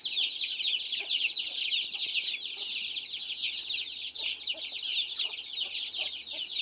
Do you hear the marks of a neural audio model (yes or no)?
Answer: no